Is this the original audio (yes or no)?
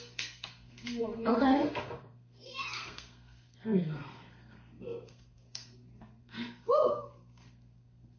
no